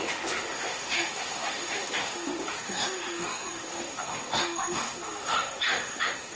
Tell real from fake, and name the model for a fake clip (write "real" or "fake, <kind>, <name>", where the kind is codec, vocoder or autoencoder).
fake, autoencoder, DAC-VAE